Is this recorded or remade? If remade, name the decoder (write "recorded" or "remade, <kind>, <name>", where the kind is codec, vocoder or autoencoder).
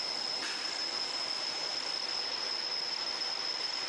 recorded